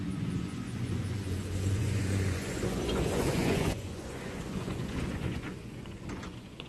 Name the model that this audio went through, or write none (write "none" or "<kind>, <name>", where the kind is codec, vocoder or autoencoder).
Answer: vocoder, Vocos